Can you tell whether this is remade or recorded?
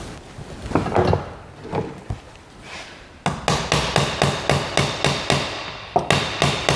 recorded